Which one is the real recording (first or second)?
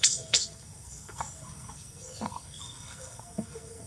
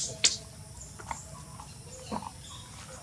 second